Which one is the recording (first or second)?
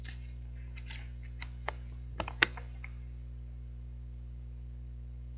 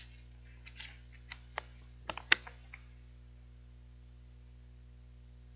second